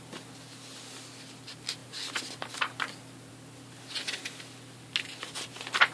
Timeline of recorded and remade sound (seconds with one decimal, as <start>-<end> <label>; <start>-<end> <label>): 0.0-5.9 recorded